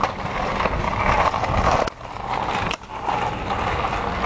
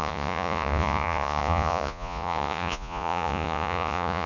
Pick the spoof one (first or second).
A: second